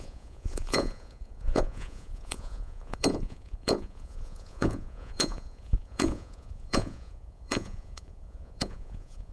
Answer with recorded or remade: remade